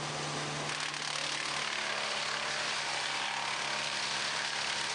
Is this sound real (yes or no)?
yes